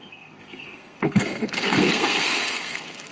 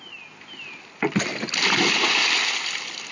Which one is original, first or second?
second